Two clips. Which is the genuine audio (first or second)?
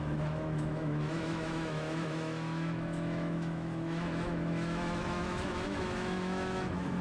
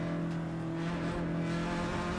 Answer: second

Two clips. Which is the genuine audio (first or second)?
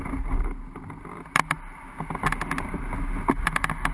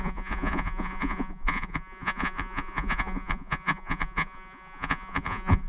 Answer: first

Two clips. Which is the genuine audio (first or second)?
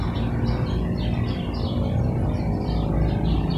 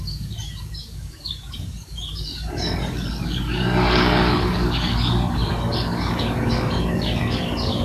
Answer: first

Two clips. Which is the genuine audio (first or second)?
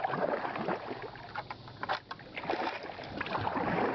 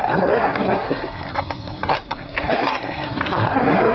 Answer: first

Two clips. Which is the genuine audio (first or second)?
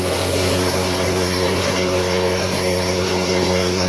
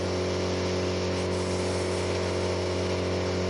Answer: second